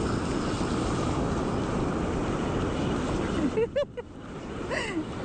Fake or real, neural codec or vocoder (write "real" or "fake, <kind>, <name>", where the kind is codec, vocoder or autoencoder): real